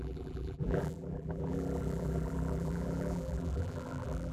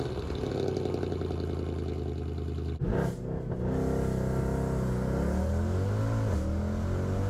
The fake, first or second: first